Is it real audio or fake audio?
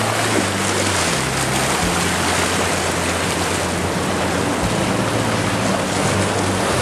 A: real